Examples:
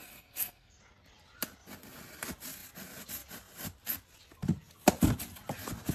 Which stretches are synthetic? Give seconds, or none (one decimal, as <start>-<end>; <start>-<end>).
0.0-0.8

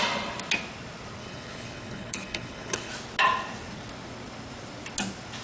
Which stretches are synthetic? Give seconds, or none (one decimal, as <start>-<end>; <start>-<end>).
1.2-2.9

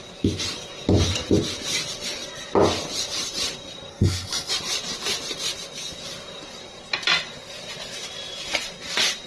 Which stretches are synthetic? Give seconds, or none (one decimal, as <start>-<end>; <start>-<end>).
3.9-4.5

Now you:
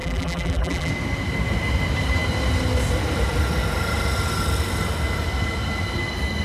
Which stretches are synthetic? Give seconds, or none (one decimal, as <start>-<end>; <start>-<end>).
0.0-0.9